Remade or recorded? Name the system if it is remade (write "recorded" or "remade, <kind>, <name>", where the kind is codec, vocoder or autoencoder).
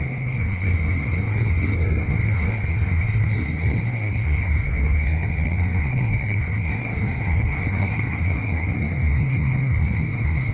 remade, codec, SNAC